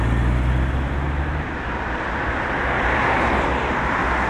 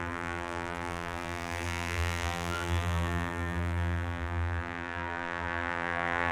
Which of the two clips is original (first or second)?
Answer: first